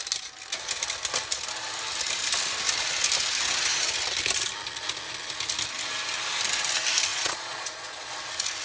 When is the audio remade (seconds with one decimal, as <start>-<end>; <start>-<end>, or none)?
7.1-8.1